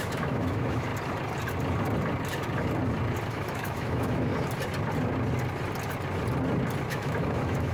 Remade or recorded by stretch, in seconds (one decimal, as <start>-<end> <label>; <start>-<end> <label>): 0.0-0.9 remade; 0.9-3.3 recorded; 3.3-4.3 remade; 4.3-6.9 recorded; 6.9-7.7 remade